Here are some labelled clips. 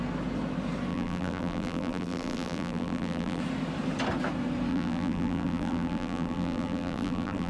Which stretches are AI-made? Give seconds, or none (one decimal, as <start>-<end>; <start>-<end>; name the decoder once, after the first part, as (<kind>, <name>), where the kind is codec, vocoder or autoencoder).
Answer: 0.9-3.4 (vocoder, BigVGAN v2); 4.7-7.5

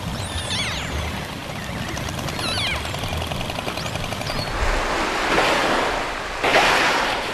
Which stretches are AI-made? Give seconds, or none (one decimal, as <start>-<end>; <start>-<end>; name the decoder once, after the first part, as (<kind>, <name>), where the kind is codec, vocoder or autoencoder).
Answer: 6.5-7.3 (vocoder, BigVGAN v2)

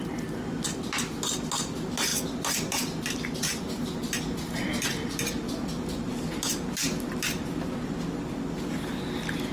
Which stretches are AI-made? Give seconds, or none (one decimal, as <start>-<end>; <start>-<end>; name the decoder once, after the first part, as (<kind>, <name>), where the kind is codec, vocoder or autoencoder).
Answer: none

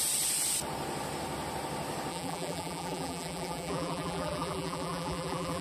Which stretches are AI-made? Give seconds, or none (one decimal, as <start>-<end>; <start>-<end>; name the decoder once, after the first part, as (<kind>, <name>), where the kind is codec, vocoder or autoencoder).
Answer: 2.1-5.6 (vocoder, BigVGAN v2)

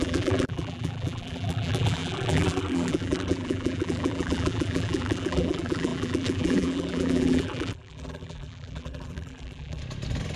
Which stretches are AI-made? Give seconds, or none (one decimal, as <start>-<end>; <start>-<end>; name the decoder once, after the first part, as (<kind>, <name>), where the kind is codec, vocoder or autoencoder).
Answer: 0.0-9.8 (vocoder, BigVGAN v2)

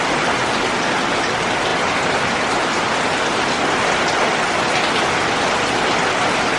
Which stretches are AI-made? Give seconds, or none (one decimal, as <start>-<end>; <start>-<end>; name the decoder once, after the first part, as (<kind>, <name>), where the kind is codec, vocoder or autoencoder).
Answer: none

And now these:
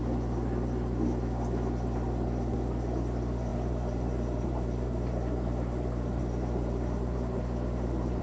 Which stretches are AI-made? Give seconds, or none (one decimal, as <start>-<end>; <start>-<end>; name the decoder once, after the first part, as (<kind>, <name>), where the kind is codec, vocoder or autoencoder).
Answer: 3.5-8.2 (vocoder, BigVGAN v2)